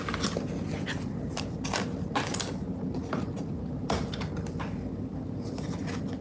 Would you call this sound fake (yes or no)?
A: no